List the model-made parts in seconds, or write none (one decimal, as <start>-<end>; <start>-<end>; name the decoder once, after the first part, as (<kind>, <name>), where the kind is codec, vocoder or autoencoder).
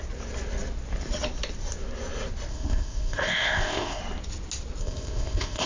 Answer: 2.5-4.0 (codec, ZipCodec); 4.8-5.7